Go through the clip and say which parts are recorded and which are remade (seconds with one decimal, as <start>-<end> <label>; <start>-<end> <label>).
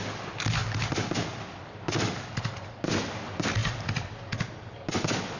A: 0.0-5.4 recorded